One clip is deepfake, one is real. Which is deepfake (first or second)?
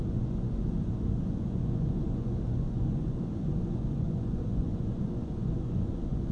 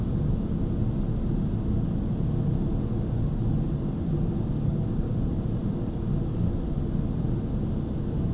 first